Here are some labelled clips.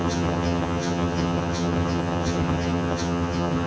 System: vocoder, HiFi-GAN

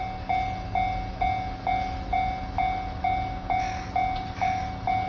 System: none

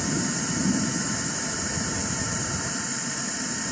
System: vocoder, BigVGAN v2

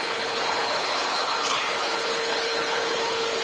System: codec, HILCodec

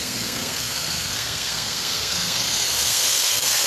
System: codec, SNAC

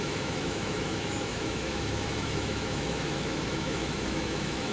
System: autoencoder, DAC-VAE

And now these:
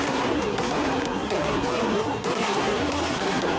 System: codec, SNAC